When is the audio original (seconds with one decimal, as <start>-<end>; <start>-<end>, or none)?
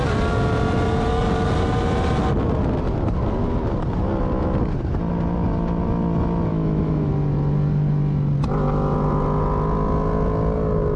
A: 0.0-6.5; 7.1-11.0